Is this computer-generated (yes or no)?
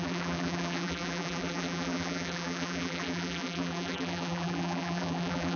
yes